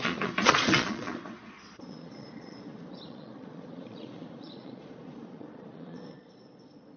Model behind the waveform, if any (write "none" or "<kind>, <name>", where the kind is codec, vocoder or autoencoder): vocoder, Vocos